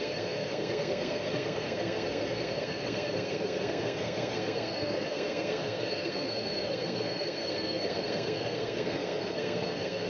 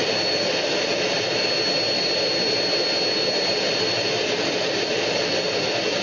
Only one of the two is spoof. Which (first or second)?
first